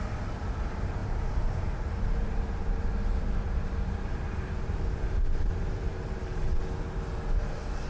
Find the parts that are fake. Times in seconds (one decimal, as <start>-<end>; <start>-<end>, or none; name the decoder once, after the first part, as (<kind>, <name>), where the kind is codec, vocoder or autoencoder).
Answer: 1.0-5.3 (vocoder, BigVGAN v2); 5.9-6.6